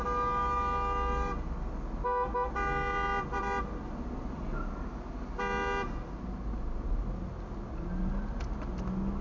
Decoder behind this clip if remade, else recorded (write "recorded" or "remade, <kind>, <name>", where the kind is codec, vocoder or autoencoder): recorded